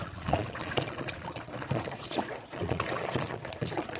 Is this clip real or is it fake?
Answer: fake